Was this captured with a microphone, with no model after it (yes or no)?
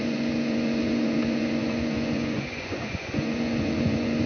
no